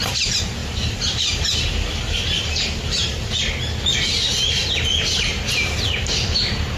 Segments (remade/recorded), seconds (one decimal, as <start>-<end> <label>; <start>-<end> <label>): 0.0-3.9 recorded; 3.9-6.8 remade